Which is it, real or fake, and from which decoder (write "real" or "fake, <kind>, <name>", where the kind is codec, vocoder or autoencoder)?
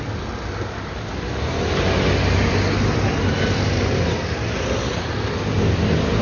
real